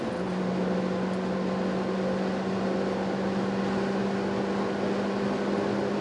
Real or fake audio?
real